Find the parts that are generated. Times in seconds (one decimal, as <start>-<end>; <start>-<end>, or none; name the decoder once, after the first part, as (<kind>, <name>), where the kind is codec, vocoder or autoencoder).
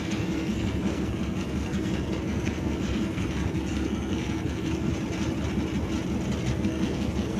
0.0-4.9 (codec, SNAC); 6.5-7.4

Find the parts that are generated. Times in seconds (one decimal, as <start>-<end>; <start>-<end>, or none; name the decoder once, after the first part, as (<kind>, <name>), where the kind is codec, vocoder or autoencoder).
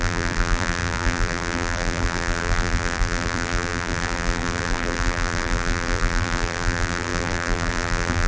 0.0-8.3 (vocoder, BigVGAN v2)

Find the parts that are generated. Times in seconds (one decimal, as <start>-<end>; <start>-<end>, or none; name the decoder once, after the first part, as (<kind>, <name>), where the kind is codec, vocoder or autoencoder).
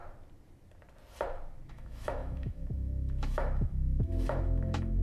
1.7-5.0 (autoencoder, DAC-VAE)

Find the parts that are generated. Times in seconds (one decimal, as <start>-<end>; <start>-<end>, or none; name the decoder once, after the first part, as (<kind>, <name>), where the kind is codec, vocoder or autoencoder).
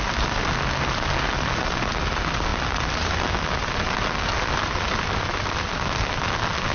none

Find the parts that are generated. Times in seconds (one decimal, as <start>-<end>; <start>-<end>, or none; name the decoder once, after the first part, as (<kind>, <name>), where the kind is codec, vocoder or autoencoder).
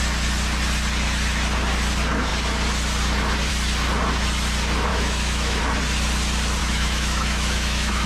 4.9-5.6 (autoencoder, DAC-VAE); 6.6-8.1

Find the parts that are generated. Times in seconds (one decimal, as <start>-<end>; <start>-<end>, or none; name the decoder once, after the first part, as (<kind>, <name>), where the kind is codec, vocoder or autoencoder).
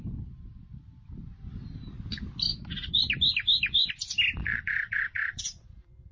4.4-5.4 (vocoder, Vocos)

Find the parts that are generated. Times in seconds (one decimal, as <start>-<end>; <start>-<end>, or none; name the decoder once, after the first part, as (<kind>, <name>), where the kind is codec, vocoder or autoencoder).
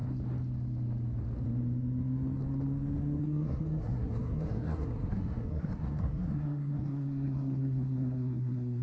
3.2-8.8 (codec, SNAC)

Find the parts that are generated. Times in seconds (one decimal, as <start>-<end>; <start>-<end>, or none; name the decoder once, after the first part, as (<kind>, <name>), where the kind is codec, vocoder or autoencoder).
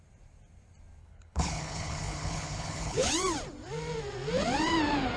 1.0-3.1 (codec, HILCodec)